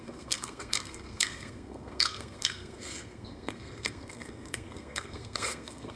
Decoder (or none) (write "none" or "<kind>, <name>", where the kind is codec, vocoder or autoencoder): codec, SNAC